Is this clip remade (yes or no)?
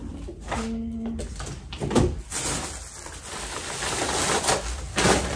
no